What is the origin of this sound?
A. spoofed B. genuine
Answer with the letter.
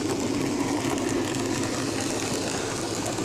B